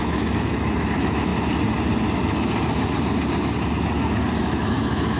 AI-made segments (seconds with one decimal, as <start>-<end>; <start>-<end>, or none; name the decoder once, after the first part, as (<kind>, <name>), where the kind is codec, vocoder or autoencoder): 0.0-1.3 (autoencoder, DAC-VAE); 4.4-5.2

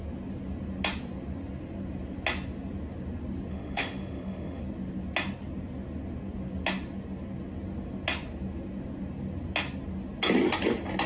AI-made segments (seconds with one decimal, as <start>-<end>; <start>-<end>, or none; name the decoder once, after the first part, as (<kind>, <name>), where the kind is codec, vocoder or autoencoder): 3.5-4.6 (autoencoder, DAC-VAE)

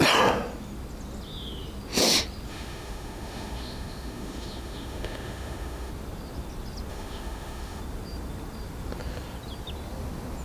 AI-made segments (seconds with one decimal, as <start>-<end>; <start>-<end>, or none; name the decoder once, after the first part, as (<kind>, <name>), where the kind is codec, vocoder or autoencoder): 2.5-5.9 (autoencoder, DAC-VAE); 6.9-7.8

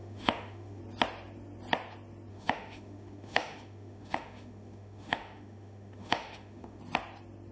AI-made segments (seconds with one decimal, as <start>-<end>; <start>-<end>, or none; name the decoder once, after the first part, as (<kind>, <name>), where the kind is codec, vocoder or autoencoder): 0.0-0.8 (autoencoder, DAC-VAE); 2.3-6.8